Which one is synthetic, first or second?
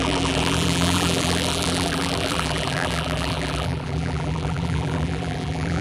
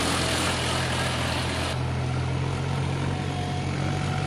first